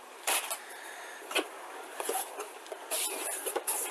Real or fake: fake